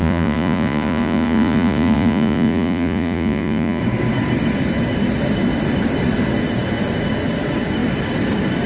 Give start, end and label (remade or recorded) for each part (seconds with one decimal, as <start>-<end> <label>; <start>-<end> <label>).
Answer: 0.0-3.8 remade; 3.8-8.7 recorded